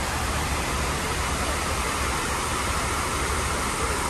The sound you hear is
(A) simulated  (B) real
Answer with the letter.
B